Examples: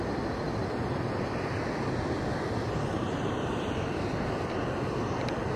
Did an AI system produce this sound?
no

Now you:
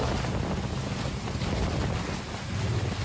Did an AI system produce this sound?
no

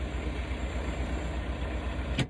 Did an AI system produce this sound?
no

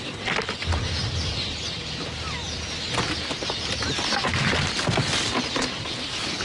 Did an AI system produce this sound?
no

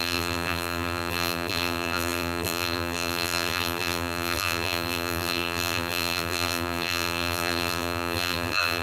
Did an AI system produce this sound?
yes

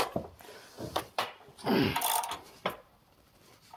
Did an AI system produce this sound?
yes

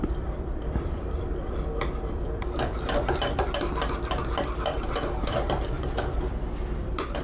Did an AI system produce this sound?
yes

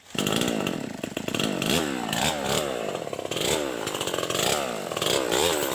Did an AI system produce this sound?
no